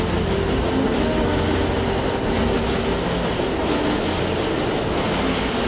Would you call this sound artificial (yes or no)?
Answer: no